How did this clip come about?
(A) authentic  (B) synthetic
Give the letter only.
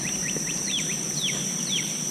B